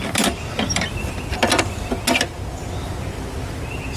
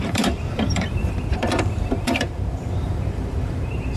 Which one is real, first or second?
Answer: first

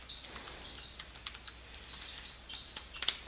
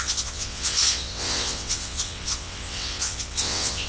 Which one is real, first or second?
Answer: first